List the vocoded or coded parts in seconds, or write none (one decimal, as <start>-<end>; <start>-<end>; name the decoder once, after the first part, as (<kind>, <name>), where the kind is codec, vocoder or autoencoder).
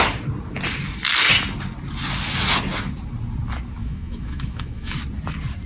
3.8-5.0 (autoencoder, DAC-VAE)